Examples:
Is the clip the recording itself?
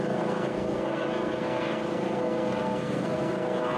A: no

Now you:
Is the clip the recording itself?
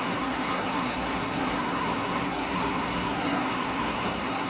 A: no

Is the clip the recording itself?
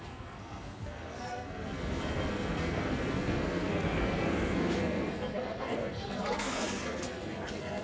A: no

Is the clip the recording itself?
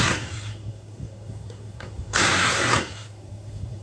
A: no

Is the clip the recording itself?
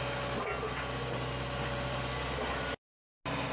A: yes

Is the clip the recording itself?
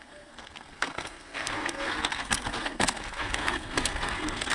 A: no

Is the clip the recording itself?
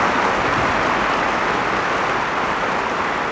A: yes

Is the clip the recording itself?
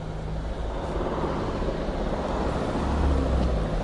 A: yes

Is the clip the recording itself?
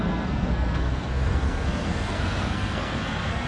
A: no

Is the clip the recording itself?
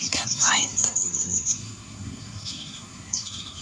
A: no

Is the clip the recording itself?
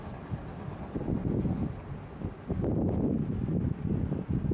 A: yes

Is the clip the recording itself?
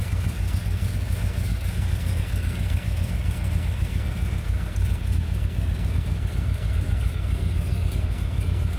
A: no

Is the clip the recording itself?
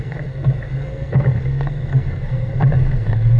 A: no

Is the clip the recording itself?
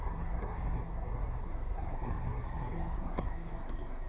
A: no